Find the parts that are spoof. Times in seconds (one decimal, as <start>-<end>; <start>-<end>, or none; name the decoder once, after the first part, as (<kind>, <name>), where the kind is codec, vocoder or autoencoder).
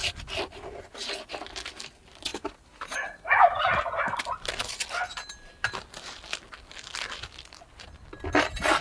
2.3-3.6 (vocoder, BigVGAN v2)